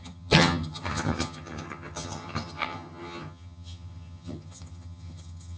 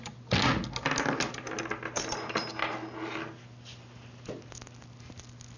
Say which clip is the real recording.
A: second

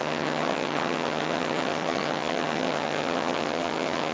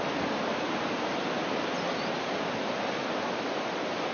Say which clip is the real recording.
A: second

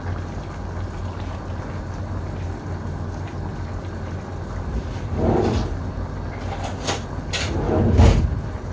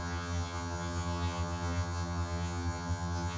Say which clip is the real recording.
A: first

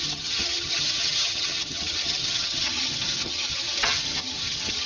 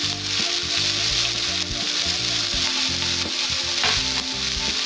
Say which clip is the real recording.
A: second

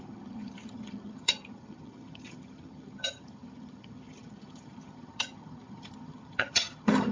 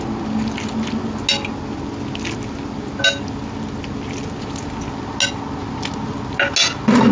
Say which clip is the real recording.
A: second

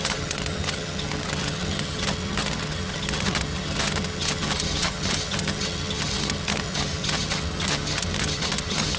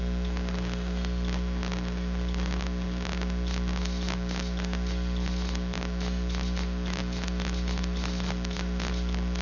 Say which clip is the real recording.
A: second